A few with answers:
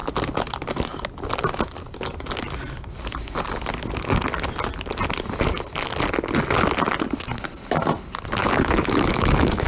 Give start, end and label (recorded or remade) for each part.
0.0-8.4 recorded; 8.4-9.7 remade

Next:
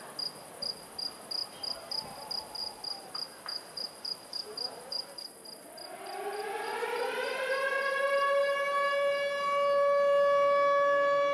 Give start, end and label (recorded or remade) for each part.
0.0-2.9 recorded; 2.9-5.0 remade; 5.0-6.2 recorded; 6.2-7.5 remade; 7.5-11.3 recorded

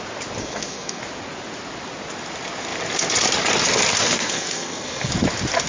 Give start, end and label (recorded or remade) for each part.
0.0-0.4 recorded; 0.4-1.0 remade; 1.0-4.0 recorded; 4.0-5.1 remade; 5.1-5.7 recorded

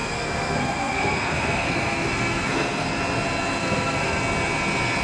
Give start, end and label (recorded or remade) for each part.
0.0-3.0 remade; 3.0-3.6 recorded; 3.6-4.2 remade; 4.2-5.0 recorded